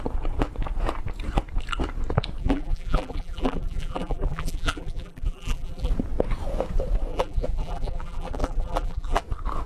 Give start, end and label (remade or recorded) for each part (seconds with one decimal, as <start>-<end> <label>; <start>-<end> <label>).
0.0-2.4 recorded; 2.4-5.9 remade; 5.9-7.1 recorded; 7.1-9.2 remade; 9.2-9.7 recorded